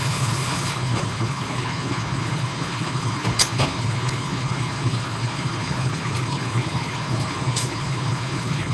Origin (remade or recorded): remade